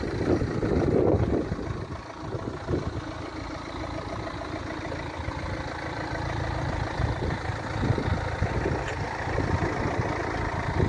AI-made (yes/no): no